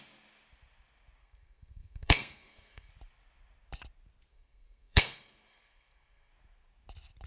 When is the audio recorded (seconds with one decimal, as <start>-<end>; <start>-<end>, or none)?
0.0-1.2; 2.9-4.3; 6.3-7.3